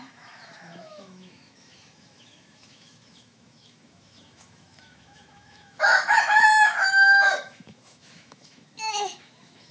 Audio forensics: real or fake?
fake